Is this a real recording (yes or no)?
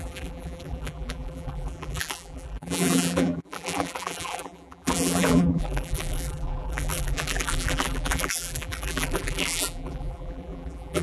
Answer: no